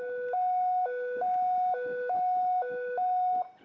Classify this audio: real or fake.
real